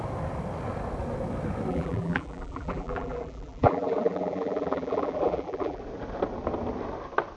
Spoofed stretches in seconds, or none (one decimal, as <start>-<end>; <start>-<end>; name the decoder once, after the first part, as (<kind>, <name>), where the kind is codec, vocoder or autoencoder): 1.7-5.8 (vocoder, BigVGAN v2)